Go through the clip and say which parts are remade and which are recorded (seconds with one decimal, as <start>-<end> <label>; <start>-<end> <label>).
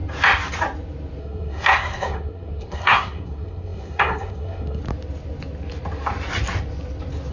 0.0-1.2 recorded; 1.2-4.8 remade; 4.8-7.3 recorded